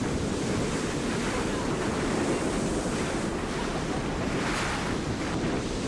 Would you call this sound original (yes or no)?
no